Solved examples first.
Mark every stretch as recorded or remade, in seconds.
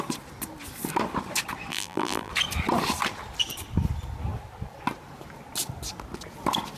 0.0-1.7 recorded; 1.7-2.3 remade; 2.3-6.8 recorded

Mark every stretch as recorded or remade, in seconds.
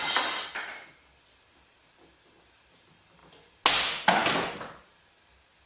0.0-5.7 recorded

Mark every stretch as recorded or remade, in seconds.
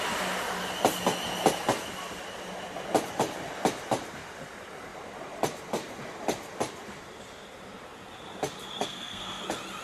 0.0-8.8 recorded; 8.8-9.4 remade; 9.4-9.8 recorded